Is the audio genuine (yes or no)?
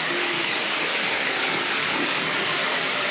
no